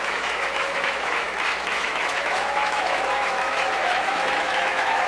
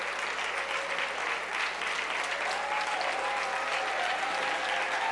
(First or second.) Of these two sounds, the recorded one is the second